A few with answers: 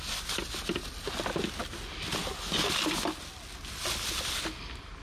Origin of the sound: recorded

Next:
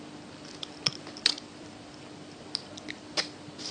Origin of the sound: recorded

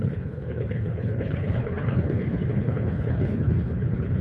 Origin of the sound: remade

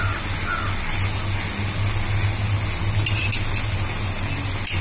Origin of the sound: recorded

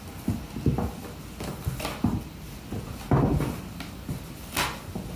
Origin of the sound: recorded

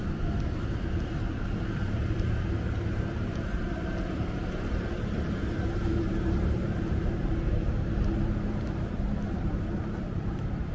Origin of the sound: remade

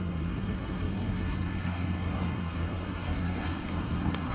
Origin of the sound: remade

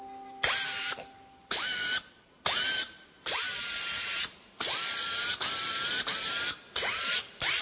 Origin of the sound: recorded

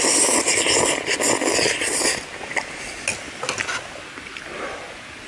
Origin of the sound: recorded